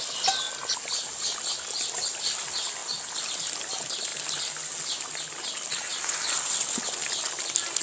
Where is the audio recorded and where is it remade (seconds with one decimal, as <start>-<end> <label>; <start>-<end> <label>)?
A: 0.0-7.8 recorded